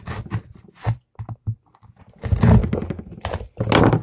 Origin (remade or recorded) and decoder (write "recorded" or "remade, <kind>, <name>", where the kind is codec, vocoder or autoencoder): recorded